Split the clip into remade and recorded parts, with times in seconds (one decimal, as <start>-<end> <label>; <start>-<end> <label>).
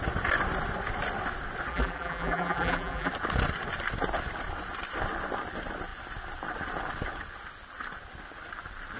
0.0-1.7 recorded; 1.7-3.1 remade; 3.1-9.0 recorded